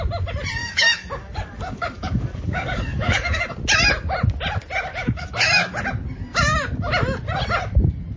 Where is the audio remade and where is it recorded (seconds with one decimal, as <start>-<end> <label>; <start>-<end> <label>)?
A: 0.0-0.6 recorded; 0.6-3.5 remade; 3.5-4.9 recorded; 4.9-5.8 remade; 5.8-8.2 recorded